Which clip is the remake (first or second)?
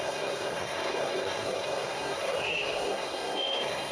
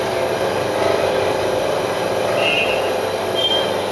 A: first